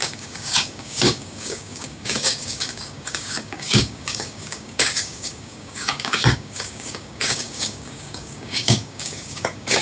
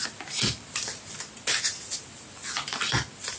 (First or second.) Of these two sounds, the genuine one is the second